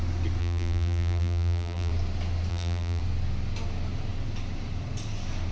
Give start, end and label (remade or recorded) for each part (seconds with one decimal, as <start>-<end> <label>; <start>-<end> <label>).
0.0-0.4 recorded; 0.4-1.9 remade; 1.9-2.5 recorded; 2.5-3.0 remade; 3.0-5.5 recorded